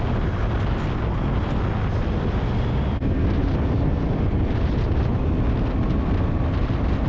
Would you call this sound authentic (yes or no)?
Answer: yes